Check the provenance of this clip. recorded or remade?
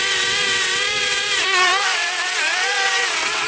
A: remade